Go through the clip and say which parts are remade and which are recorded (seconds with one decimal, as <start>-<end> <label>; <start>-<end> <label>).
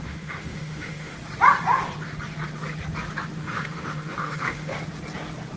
0.0-1.1 remade; 1.1-3.4 recorded; 3.4-4.7 remade; 4.7-5.6 recorded